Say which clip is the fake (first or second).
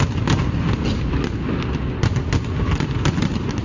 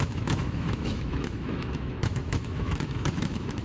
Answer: second